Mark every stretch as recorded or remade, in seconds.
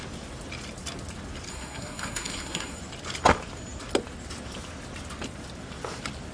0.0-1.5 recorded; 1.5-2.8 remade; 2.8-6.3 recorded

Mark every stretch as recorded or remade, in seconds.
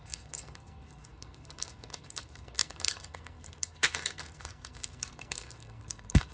0.0-6.3 remade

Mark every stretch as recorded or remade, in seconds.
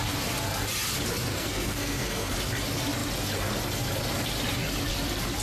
0.0-1.3 recorded; 1.3-2.3 remade; 2.3-5.4 recorded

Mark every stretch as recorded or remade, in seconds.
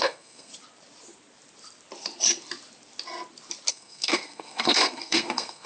0.0-0.5 remade; 0.5-3.7 recorded; 3.7-5.7 remade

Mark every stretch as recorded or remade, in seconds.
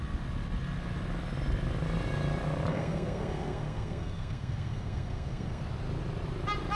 0.0-2.7 recorded; 2.7-5.6 remade; 5.6-6.7 recorded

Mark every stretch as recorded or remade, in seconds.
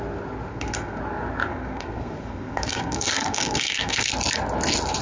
0.0-0.5 recorded; 0.5-1.0 remade; 1.0-1.5 recorded; 1.5-4.1 remade; 4.1-5.0 recorded